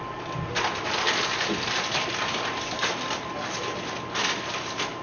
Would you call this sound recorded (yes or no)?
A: yes